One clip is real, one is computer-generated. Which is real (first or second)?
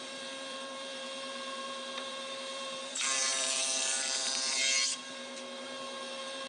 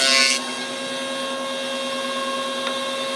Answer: second